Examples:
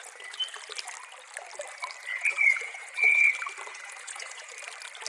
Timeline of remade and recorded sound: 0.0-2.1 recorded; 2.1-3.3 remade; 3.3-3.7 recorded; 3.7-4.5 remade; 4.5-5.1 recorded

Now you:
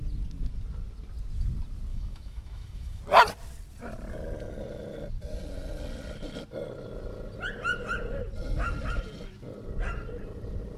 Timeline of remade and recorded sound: 0.0-1.9 recorded; 1.9-3.0 remade; 3.0-10.8 recorded

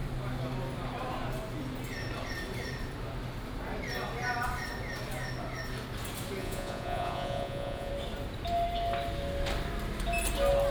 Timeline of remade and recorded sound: 0.0-6.4 recorded; 6.4-7.9 remade; 7.9-10.7 recorded

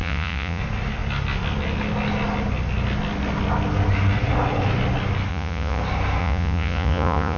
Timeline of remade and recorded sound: 0.0-0.6 remade; 0.6-5.3 recorded; 5.3-5.8 remade; 5.8-6.2 recorded; 6.2-7.4 remade

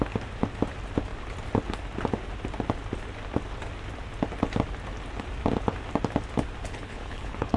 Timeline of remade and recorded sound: 0.0-6.6 recorded; 6.6-7.6 remade